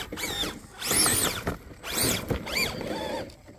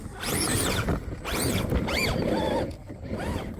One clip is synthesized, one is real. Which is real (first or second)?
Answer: first